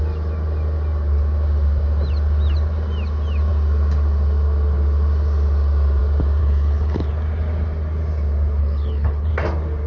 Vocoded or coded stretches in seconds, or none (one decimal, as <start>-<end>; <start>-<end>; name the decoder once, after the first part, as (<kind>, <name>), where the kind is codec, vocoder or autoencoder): 6.4-7.1 (codec, HILCodec); 8.6-9.3